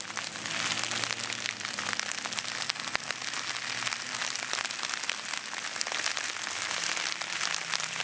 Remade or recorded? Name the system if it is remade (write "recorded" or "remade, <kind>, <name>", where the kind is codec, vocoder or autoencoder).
recorded